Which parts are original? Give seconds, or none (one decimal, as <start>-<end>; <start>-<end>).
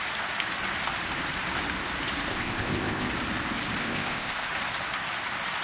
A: 0.0-2.3; 3.1-3.8; 4.5-5.6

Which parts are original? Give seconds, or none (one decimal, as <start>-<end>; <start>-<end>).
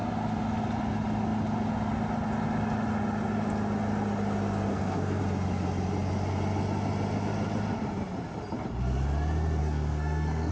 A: 0.0-4.7; 5.2-9.6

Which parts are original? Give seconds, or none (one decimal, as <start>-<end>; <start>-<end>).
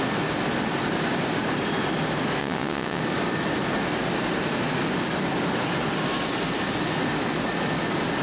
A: 0.0-2.4; 3.0-8.2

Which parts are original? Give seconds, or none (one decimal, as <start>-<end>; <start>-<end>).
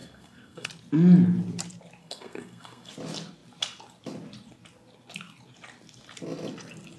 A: 0.7-2.0; 2.9-7.0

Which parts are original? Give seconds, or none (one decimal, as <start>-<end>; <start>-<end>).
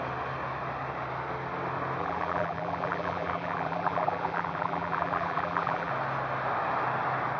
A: 0.0-2.0; 5.9-7.4